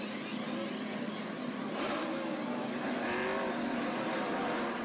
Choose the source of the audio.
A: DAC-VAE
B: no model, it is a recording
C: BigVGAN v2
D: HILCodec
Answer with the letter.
B